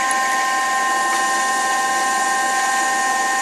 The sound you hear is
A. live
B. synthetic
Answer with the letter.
A